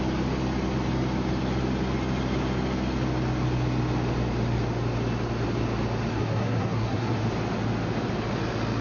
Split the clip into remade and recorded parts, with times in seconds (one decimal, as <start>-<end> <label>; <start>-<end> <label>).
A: 0.0-6.1 recorded; 6.1-7.2 remade; 7.2-8.8 recorded